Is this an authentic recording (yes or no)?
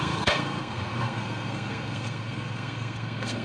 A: no